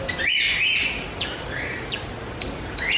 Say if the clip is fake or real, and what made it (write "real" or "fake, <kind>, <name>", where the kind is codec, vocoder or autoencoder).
real